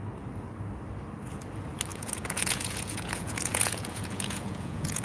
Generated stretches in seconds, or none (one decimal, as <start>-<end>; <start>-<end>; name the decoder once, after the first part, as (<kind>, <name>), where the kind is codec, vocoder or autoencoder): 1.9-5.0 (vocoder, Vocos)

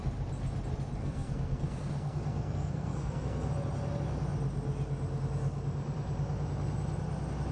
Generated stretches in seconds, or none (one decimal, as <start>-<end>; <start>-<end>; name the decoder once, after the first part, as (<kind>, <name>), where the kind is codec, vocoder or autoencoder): 1.0-3.5 (codec, SNAC)

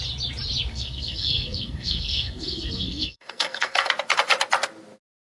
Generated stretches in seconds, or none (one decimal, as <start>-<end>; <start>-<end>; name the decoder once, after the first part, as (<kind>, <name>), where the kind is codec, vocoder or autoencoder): 0.7-3.9 (codec, SNAC)

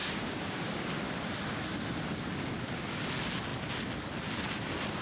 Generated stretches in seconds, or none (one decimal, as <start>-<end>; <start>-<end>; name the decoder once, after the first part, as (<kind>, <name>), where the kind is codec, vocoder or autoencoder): 0.0-0.9 (codec, DAC)

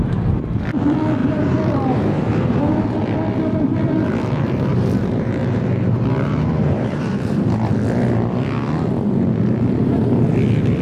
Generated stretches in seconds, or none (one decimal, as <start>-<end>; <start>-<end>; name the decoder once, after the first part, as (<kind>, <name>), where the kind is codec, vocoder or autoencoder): 1.2-2.6 (vocoder, BigVGAN v2); 4.7-7.7

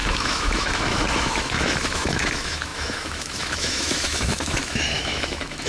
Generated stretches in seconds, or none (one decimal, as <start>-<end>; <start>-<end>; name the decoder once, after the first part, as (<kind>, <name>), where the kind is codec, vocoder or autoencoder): 0.0-5.7 (autoencoder, DAC-VAE)

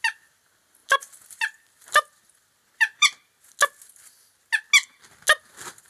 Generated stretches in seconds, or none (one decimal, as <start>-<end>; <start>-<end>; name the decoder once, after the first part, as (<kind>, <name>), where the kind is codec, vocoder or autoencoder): 0.8-3.2 (vocoder, BigVGAN v2)